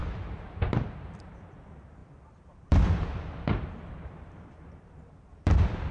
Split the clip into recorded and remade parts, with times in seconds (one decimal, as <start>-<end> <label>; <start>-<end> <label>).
0.0-0.7 recorded; 0.7-5.9 remade